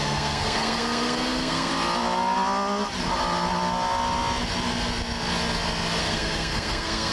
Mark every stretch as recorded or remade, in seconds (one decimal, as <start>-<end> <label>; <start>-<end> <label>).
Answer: 0.0-1.7 remade; 1.7-6.0 recorded; 6.0-7.1 remade